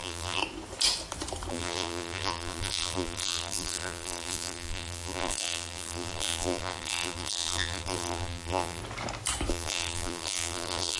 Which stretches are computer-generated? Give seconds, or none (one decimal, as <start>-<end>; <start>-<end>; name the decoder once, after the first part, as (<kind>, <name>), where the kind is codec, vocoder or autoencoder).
0.0-0.4 (vocoder, BigVGAN v2); 1.5-8.8; 9.5-11.0